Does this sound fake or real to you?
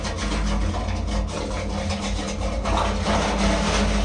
real